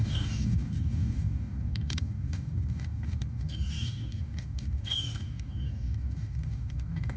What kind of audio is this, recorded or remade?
remade